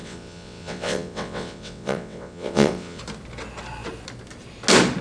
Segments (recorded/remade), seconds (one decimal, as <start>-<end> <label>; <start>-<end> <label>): 0.0-3.0 remade; 3.0-5.0 recorded